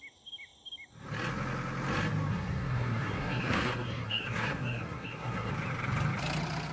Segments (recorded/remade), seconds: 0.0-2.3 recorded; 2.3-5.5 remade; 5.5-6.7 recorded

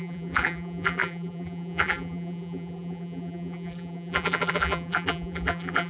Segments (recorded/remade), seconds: 0.0-5.9 remade

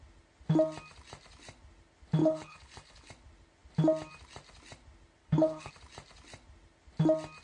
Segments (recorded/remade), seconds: 0.0-2.2 recorded; 2.2-3.1 remade; 3.1-5.2 recorded; 5.2-5.7 remade; 5.7-7.4 recorded

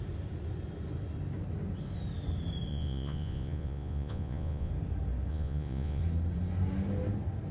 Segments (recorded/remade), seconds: 0.0-2.7 recorded; 2.7-4.7 remade; 4.7-5.3 recorded; 5.3-6.0 remade; 6.0-7.5 recorded

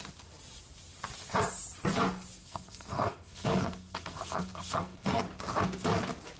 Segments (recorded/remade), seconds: 0.0-2.4 recorded; 2.4-5.2 remade; 5.2-6.4 recorded